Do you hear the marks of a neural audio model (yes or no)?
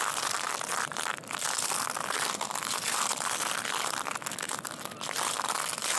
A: no